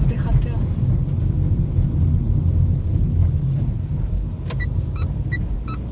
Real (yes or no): yes